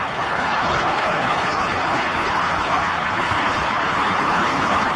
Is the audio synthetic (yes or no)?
yes